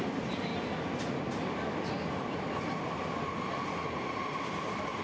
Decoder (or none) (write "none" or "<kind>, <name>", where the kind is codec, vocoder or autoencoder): none